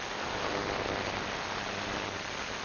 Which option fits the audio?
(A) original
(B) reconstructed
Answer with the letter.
A